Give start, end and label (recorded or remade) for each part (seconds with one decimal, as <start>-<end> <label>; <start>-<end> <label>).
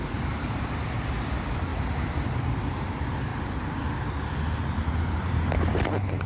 0.0-3.3 remade; 3.3-4.9 recorded; 4.9-6.3 remade